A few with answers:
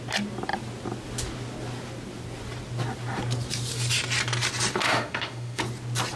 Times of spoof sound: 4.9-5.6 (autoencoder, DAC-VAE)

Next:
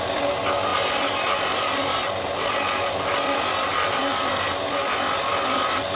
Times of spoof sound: none

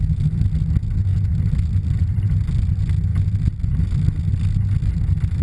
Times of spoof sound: none

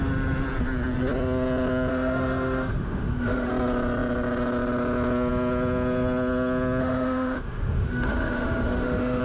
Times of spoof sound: 1.9-3.5 (autoencoder, DAC-VAE); 6.8-9.2

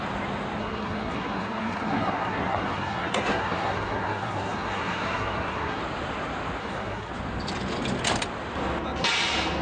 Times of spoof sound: 0.6-5.8 (codec, SNAC); 6.6-7.1